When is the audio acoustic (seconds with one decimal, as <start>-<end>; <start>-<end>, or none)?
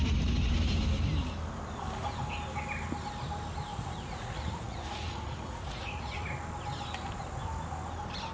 0.0-3.7; 6.3-8.3